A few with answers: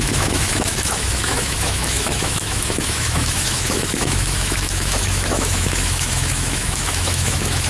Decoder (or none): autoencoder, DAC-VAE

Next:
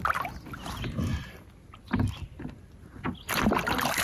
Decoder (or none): none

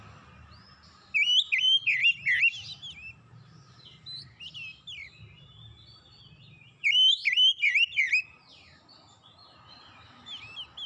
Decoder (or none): none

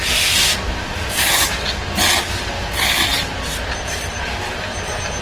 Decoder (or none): none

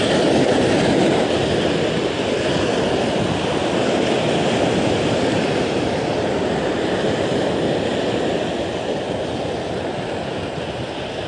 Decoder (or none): none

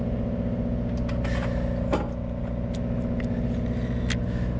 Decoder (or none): none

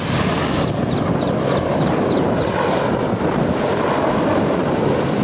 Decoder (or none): none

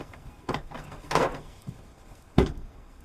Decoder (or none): codec, SNAC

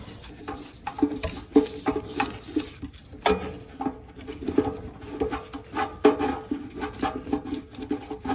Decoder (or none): none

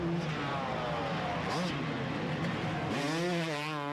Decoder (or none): none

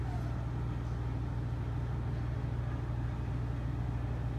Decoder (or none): none